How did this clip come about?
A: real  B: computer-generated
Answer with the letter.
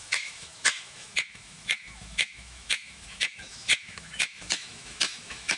B